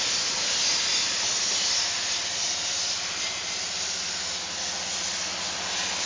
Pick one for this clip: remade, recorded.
recorded